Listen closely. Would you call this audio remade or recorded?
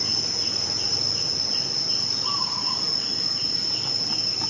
recorded